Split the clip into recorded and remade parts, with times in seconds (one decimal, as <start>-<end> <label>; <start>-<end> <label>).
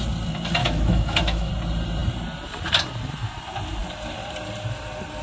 0.0-0.6 recorded; 0.6-1.5 remade; 1.5-5.2 recorded